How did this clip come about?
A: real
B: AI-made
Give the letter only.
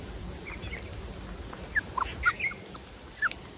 B